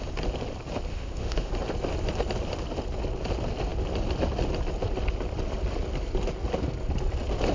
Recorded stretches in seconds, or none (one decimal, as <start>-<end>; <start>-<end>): 0.0-0.9; 1.5-7.5